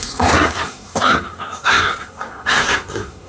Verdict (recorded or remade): remade